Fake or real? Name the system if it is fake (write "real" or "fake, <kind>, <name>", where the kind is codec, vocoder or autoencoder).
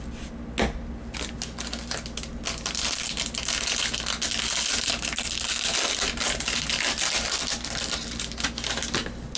real